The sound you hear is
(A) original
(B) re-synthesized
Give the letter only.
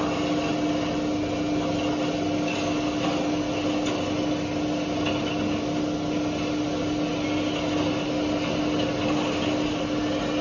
A